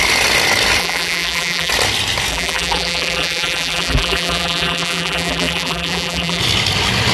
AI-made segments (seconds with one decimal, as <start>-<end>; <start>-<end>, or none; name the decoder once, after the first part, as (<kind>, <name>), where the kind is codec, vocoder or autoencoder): 0.8-1.7 (vocoder, BigVGAN v2); 2.3-6.4